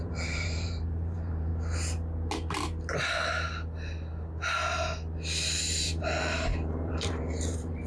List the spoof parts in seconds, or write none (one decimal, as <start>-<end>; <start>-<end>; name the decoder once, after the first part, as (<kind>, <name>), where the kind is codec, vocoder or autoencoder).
0.0-1.5 (vocoder, BigVGAN v2); 5.6-7.9